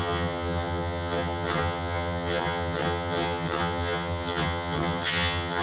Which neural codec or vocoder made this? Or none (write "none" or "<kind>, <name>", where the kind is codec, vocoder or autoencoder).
vocoder, HiFi-GAN